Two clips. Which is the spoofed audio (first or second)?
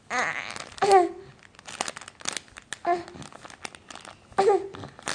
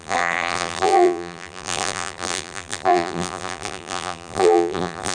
second